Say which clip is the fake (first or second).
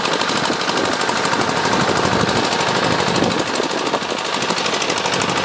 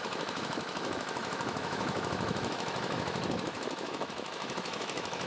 second